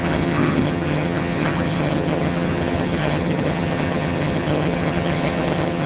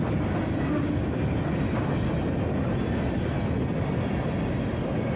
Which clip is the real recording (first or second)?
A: second